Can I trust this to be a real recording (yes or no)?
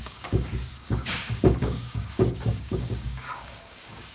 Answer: no